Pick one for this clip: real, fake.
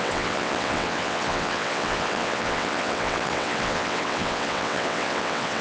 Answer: fake